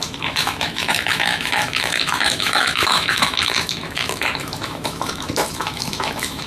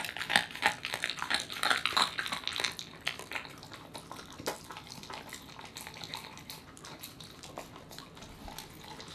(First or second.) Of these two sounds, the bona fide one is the second